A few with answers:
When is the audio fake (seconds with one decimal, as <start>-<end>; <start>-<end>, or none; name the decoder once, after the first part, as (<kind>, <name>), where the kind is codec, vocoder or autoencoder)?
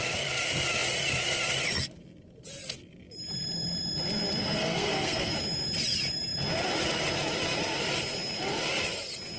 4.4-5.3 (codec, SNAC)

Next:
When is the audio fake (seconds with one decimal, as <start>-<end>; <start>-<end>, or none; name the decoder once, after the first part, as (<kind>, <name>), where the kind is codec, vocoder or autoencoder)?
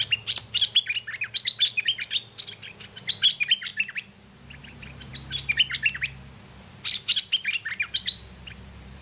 none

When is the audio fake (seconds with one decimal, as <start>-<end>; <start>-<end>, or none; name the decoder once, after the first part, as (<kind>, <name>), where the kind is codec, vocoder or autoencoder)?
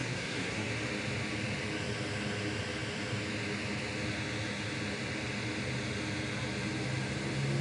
0.0-0.7 (codec, SNAC)